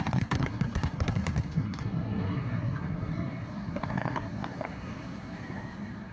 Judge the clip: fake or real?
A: fake